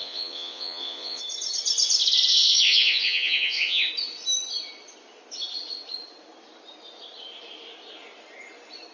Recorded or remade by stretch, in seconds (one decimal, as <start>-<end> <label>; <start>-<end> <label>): 0.0-1.2 remade; 1.2-2.3 recorded; 2.3-3.9 remade; 3.9-8.9 recorded